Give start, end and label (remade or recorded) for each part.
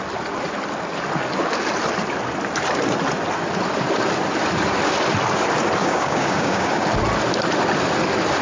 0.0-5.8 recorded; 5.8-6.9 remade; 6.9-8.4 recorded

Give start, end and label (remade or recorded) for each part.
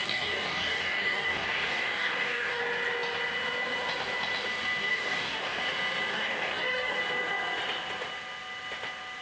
0.0-2.6 remade; 2.6-4.9 recorded; 4.9-5.6 remade; 5.6-6.1 recorded; 6.1-7.0 remade; 7.0-9.2 recorded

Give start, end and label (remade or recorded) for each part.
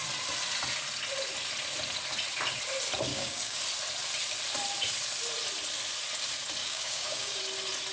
0.0-3.1 recorded; 3.1-3.6 remade; 3.6-6.6 recorded; 6.6-7.4 remade; 7.4-7.9 recorded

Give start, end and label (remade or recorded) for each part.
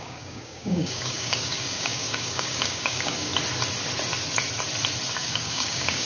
0.0-3.3 remade; 3.3-5.1 recorded; 5.1-6.0 remade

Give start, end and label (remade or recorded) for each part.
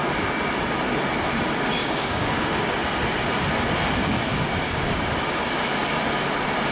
0.0-1.8 recorded; 1.8-2.5 remade; 2.5-4.0 recorded; 4.0-5.1 remade; 5.1-6.7 recorded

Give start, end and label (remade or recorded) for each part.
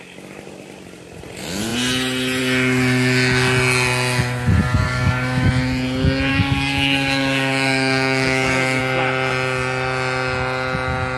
0.0-4.6 recorded; 4.6-5.5 remade; 5.5-6.3 recorded; 6.3-8.8 remade; 8.8-11.2 recorded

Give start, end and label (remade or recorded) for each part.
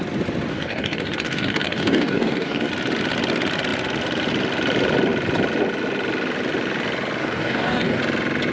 0.0-0.5 recorded; 0.5-2.7 remade; 2.7-7.2 recorded; 7.2-8.0 remade; 8.0-8.5 recorded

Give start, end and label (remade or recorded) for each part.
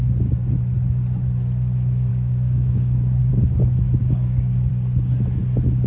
0.0-2.1 recorded; 2.1-3.3 remade; 3.3-4.0 recorded; 4.0-4.7 remade; 4.7-5.9 recorded